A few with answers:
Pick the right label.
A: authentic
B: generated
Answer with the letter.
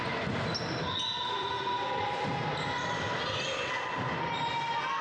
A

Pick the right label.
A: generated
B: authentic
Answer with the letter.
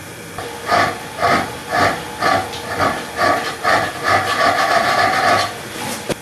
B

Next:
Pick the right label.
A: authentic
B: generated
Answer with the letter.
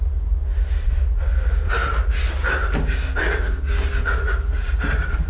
A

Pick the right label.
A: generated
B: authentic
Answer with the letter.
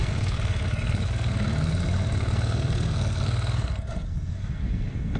A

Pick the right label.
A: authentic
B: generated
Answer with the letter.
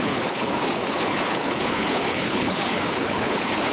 B